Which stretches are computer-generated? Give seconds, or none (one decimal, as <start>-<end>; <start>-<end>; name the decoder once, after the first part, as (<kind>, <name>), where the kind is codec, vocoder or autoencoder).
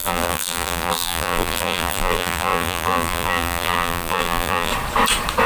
0.0-4.7 (vocoder, BigVGAN v2)